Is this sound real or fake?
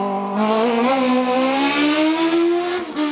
real